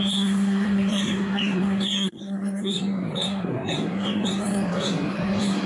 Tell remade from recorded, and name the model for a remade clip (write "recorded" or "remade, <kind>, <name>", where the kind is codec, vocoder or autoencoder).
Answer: remade, codec, SNAC